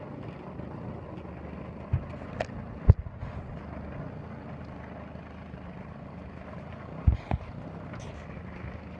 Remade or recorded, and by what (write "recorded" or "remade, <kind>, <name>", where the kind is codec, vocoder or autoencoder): recorded